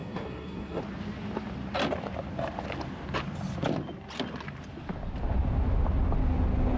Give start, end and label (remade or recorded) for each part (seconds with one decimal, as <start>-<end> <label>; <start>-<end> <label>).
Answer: 0.0-0.8 remade; 0.8-6.8 recorded